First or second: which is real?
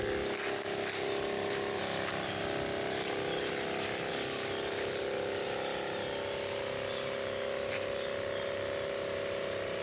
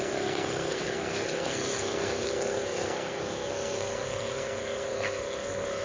first